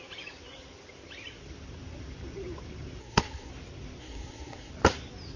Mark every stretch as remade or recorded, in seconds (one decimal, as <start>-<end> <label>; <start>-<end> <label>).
0.0-3.0 recorded; 3.0-3.5 remade; 3.5-4.0 recorded; 4.0-4.7 remade; 4.7-5.4 recorded